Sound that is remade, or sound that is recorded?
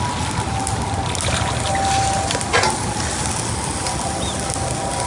recorded